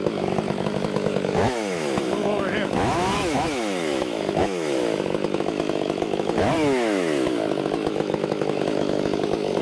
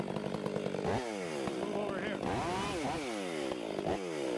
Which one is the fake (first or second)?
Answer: first